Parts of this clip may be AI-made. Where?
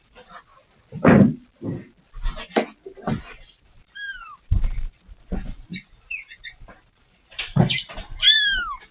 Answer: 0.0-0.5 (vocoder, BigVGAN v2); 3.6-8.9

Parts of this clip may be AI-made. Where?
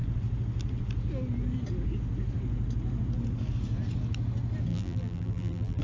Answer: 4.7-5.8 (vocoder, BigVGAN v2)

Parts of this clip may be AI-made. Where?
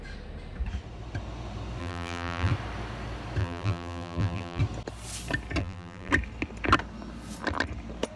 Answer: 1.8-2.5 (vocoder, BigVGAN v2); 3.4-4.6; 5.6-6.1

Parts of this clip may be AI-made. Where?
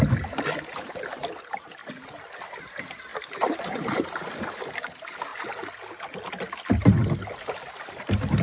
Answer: 1.8-2.4 (vocoder, BigVGAN v2); 3.1-4.6; 5.3-6.3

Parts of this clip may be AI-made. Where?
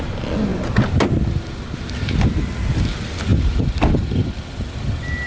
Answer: 3.3-3.9 (vocoder, BigVGAN v2)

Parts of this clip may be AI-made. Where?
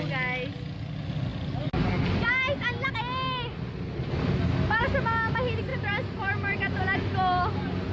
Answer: 5.7-6.8 (vocoder, BigVGAN v2)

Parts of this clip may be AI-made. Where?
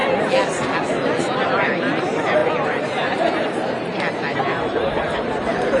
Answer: 1.2-5.8 (vocoder, BigVGAN v2)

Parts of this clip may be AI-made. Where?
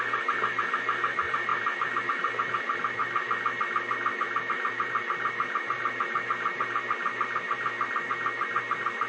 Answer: none